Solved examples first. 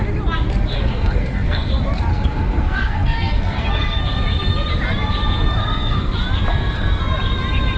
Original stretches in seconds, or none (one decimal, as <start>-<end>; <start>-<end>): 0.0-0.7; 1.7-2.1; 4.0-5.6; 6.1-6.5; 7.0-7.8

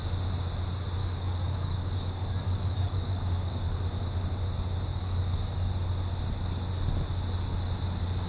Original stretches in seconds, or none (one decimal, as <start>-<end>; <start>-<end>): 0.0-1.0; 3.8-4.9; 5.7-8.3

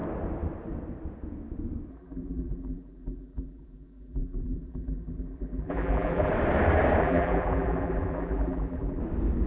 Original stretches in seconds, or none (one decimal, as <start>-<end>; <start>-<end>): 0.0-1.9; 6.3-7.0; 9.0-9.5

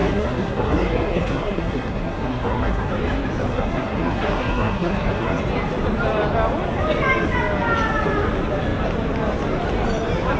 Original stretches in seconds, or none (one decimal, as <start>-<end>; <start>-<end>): 2.9-3.5; 5.4-10.4

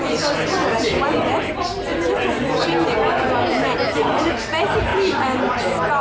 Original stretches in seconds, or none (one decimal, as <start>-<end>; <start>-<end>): 0.0-0.6; 1.5-4.9; 5.6-6.0

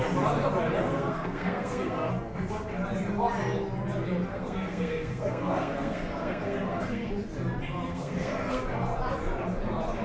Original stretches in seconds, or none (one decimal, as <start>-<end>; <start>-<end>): 0.0-0.8; 2.1-4.3; 7.1-7.9; 8.6-10.0

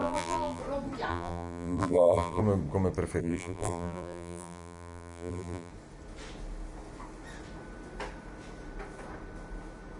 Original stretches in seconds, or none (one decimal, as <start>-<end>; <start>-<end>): 0.6-1.1; 2.4-3.2; 5.7-10.0

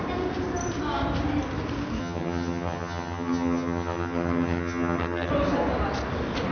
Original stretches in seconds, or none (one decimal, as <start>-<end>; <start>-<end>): 0.0-2.0; 5.3-6.5